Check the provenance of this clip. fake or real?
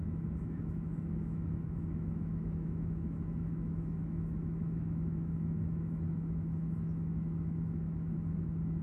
fake